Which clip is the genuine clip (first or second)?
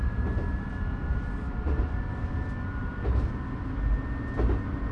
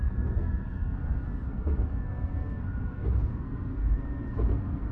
first